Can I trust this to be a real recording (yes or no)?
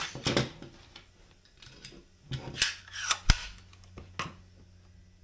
yes